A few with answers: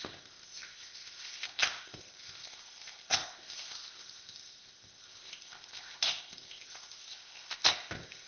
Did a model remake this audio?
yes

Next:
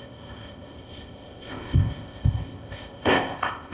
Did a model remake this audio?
yes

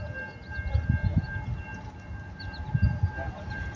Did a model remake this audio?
no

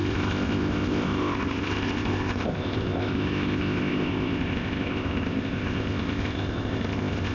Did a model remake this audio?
yes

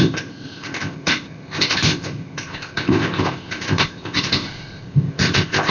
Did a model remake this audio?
yes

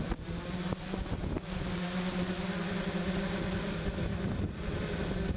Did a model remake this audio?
no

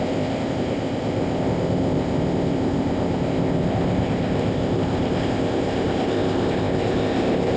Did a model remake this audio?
yes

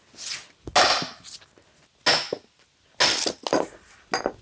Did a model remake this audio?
no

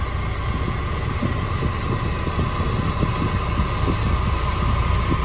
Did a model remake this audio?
no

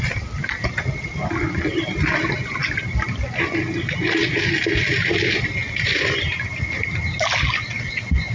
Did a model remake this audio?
no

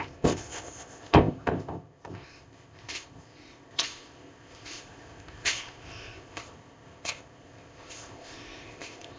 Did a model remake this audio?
yes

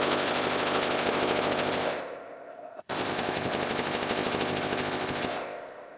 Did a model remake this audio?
yes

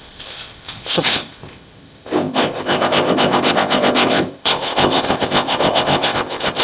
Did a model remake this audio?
yes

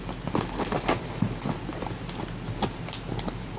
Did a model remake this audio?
no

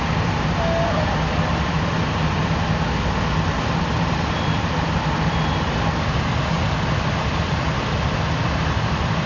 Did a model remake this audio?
no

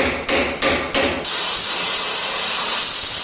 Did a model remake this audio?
no